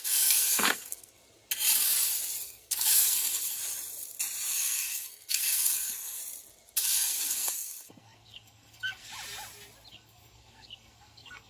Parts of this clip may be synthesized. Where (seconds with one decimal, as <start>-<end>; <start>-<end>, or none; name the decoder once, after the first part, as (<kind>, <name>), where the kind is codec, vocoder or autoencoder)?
0.0-1.2 (codec, SNAC); 2.4-3.6; 4.5-6.2; 6.8-9.1; 9.9-11.5